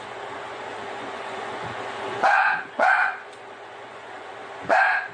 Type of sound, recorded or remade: remade